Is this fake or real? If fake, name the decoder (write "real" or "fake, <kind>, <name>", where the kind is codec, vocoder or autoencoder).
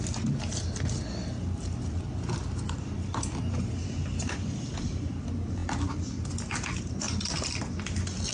real